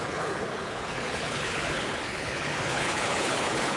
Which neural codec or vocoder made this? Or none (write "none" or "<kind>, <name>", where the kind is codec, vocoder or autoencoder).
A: codec, HILCodec